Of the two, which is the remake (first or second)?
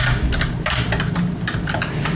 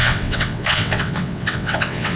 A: second